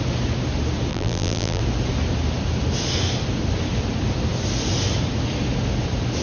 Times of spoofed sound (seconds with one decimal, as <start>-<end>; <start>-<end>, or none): 0.9-1.6